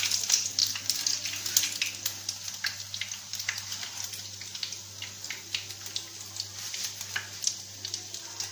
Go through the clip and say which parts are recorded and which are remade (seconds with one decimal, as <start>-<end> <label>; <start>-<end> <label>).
0.0-8.5 recorded